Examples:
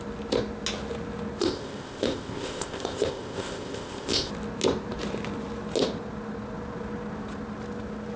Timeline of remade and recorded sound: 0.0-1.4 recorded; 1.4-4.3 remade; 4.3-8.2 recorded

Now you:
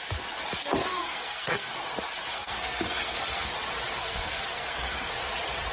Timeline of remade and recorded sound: 0.0-0.9 recorded; 0.9-1.7 remade; 1.7-2.3 recorded; 2.3-3.5 remade; 3.5-4.0 recorded; 4.0-5.1 remade; 5.1-5.7 recorded

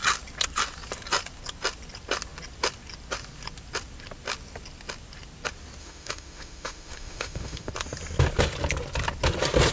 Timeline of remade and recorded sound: 0.0-5.8 recorded; 5.8-7.7 remade; 7.7-9.7 recorded

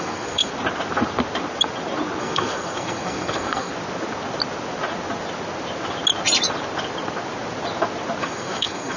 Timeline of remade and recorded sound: 0.0-0.5 remade; 0.5-2.2 recorded; 2.2-3.7 remade; 3.7-8.2 recorded; 8.2-9.0 remade

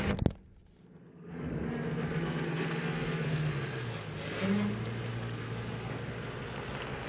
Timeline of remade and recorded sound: 0.0-1.1 recorded; 1.1-3.5 remade; 3.5-5.1 recorded; 5.1-6.1 remade; 6.1-7.1 recorded

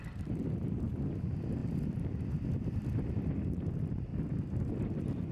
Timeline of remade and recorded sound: 0.0-4.1 remade; 4.1-4.7 recorded; 4.7-5.3 remade

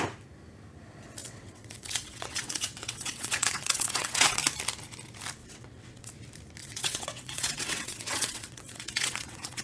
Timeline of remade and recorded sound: 0.0-1.2 recorded; 1.2-4.4 remade; 4.4-5.4 recorded; 5.4-6.1 remade; 6.1-6.6 recorded; 6.6-9.6 remade

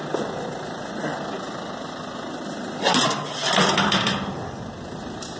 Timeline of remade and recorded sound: 0.0-5.4 recorded